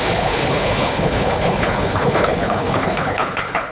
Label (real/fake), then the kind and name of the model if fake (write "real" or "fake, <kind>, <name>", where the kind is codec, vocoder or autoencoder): fake, codec, HILCodec